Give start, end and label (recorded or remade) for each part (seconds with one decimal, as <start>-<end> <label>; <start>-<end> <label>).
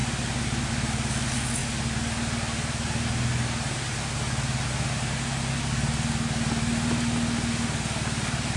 0.0-8.6 recorded